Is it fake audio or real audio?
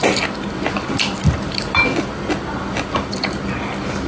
real